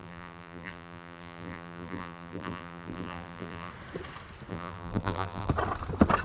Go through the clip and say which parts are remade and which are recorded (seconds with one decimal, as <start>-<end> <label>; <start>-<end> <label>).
0.0-3.7 remade; 3.7-4.5 recorded; 4.5-5.5 remade; 5.5-6.2 recorded